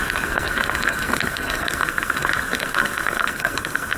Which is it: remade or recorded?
remade